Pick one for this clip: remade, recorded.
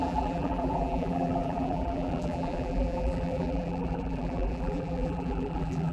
remade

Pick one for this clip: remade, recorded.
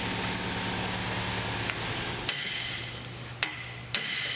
recorded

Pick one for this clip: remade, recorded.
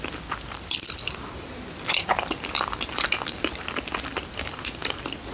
recorded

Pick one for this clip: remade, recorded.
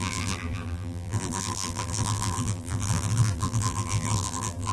remade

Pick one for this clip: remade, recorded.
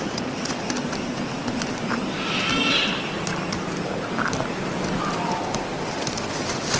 recorded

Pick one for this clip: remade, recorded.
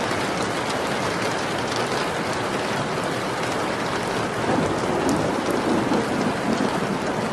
recorded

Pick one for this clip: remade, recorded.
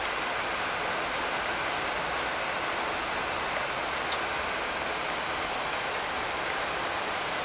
recorded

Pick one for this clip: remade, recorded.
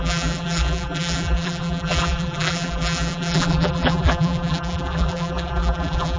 remade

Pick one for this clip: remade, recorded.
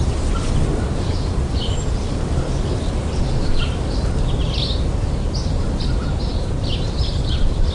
recorded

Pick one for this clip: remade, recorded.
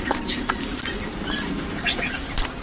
remade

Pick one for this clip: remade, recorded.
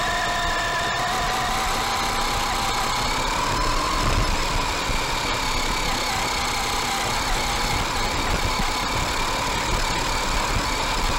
recorded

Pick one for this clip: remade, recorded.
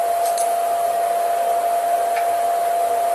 recorded